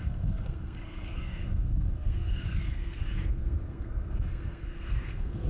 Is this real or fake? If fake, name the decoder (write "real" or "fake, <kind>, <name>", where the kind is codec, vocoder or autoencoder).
fake, codec, SNAC